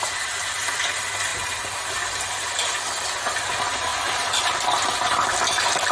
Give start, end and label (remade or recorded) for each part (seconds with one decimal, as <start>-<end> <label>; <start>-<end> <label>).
0.0-3.9 recorded; 3.9-4.7 remade; 4.7-5.9 recorded